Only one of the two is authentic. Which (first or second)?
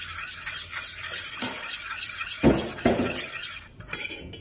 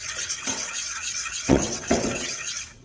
first